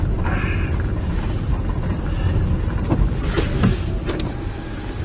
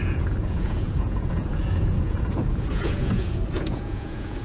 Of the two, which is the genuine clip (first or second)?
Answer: first